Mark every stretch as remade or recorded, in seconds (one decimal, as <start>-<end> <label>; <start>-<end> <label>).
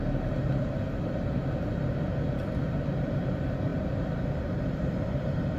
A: 0.0-3.7 recorded; 3.7-5.6 remade